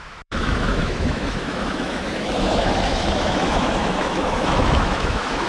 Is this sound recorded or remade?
remade